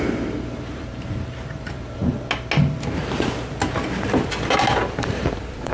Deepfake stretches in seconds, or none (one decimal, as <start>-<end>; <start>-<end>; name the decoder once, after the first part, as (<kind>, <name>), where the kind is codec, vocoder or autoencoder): 0.0-2.0 (vocoder, BigVGAN v2); 4.9-5.7